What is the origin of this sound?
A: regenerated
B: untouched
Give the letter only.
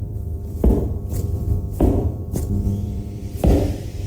A